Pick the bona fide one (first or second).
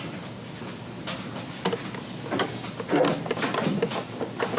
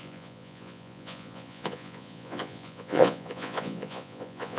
first